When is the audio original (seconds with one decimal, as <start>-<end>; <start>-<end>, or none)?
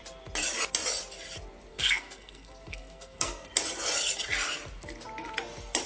0.0-1.7; 3.5-5.9